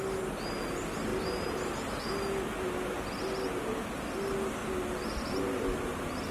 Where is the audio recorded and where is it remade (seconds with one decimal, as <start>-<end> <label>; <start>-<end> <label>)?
0.0-6.3 recorded